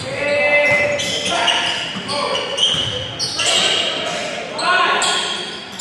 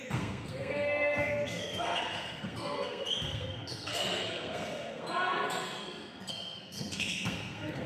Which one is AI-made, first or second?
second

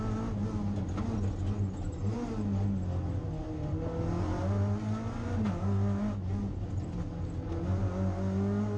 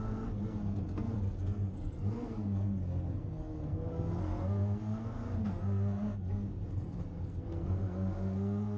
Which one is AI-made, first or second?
second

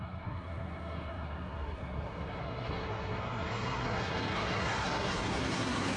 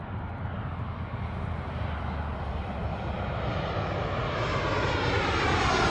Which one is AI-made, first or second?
first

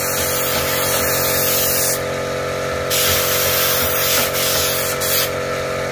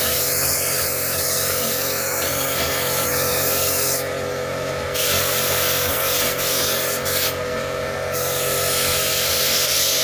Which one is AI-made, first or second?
second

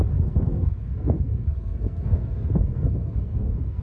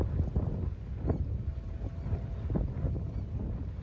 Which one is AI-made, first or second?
first